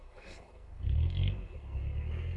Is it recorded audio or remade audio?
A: remade